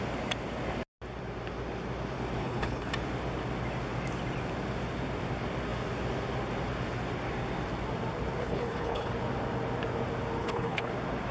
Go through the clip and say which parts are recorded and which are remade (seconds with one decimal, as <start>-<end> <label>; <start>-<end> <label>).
0.0-2.4 recorded; 2.4-2.9 remade; 2.9-8.4 recorded; 8.4-9.1 remade; 9.1-10.4 recorded; 10.4-10.9 remade; 10.9-11.3 recorded